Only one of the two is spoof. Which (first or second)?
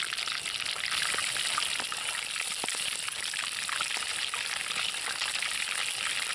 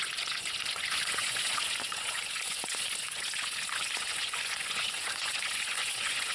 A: second